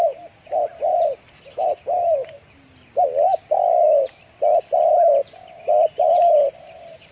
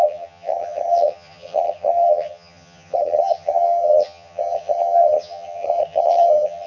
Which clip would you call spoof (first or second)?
second